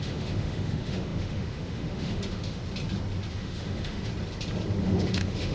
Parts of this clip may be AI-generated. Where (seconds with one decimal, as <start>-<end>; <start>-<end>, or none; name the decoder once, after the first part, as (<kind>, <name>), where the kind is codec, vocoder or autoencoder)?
0.0-2.6 (autoencoder, DAC-VAE); 3.3-4.1; 4.8-5.5